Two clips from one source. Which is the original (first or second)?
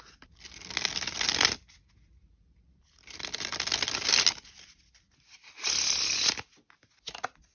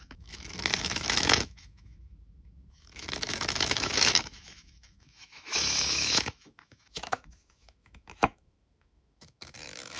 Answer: first